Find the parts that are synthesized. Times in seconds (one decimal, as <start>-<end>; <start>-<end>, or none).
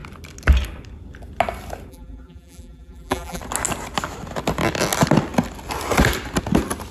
1.9-3.4